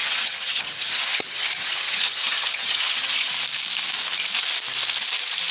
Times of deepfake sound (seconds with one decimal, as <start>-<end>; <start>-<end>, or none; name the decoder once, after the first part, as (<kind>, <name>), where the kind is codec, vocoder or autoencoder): 0.0-3.3 (vocoder, HiFi-GAN)